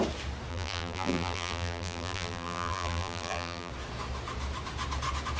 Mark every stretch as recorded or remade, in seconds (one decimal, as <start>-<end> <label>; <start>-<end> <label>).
0.0-0.5 recorded; 0.5-3.7 remade; 3.7-5.4 recorded